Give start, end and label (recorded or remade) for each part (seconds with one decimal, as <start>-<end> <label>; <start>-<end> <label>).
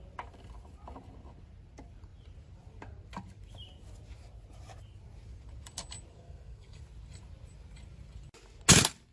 0.0-6.1 recorded; 6.1-6.8 remade; 6.8-9.1 recorded